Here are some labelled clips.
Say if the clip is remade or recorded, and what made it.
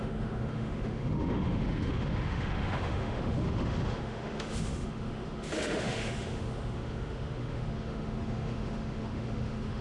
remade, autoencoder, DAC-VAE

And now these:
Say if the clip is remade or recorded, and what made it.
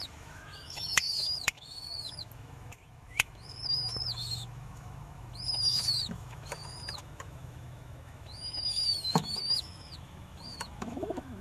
remade, autoencoder, DAC-VAE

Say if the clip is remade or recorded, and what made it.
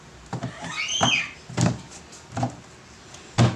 recorded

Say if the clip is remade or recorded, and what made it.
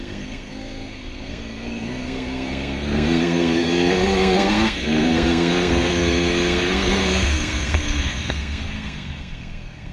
remade, codec, SNAC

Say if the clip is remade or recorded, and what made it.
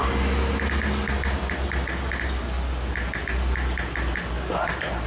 recorded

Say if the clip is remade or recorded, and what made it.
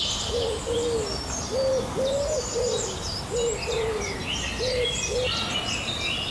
recorded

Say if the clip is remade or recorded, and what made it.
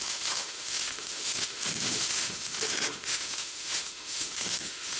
remade, autoencoder, DAC-VAE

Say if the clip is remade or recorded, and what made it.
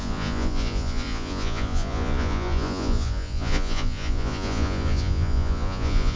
remade, vocoder, Vocos